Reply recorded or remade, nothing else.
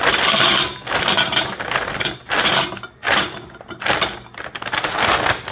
recorded